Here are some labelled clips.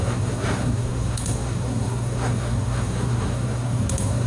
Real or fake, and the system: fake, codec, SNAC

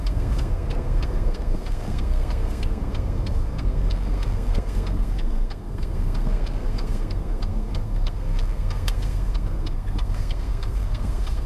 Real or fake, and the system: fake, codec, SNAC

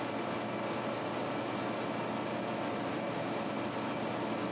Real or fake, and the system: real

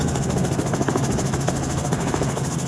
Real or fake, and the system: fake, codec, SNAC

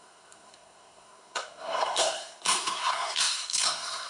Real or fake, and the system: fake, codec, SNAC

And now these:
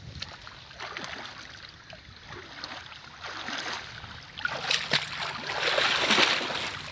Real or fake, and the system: real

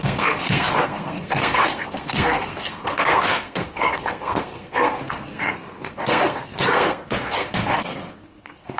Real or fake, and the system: fake, codec, SNAC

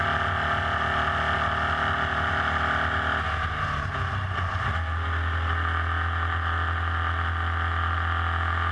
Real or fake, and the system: real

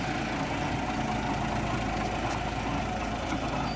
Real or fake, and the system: real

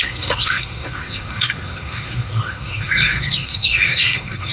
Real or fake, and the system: fake, codec, SNAC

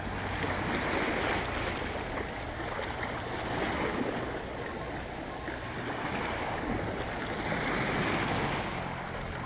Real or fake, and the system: real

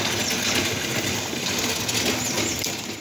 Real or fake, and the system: real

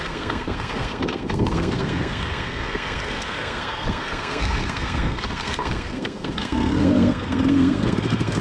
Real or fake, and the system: fake, codec, SNAC